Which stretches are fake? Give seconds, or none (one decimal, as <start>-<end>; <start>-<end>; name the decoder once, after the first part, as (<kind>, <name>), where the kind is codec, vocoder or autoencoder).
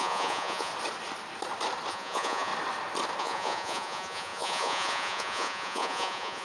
0.0-0.7 (vocoder, Vocos); 1.9-2.5; 3.2-6.4